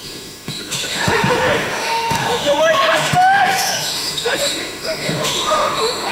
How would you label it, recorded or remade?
remade